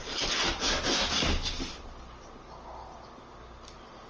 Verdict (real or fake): real